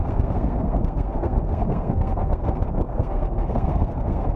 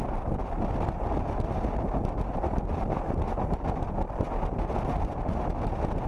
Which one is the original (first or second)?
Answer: second